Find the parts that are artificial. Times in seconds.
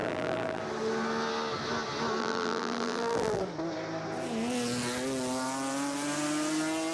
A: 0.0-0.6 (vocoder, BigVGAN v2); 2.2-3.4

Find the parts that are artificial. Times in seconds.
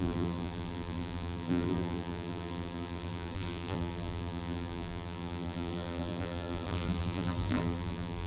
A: 0.0-8.3 (vocoder, BigVGAN v2)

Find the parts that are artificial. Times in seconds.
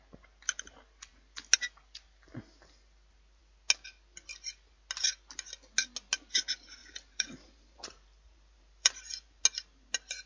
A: 6.8-9.4 (vocoder, BigVGAN v2)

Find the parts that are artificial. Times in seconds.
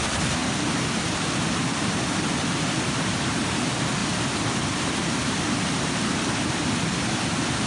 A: none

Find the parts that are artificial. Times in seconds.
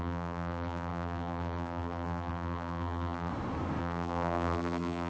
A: 0.0-3.3 (vocoder, BigVGAN v2); 3.8-5.1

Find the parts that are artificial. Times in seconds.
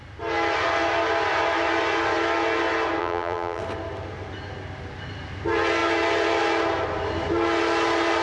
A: 3.0-3.6 (vocoder, BigVGAN v2)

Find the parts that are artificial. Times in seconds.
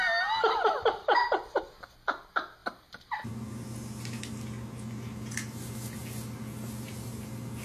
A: 2.6-3.3 (vocoder, BigVGAN v2)